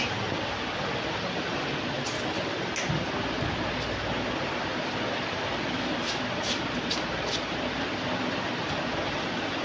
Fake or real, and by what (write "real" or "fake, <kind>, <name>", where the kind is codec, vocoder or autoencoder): real